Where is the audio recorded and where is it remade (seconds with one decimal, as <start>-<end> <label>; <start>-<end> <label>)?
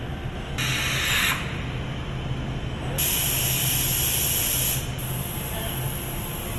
0.0-6.6 recorded